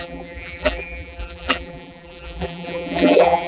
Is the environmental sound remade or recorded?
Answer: remade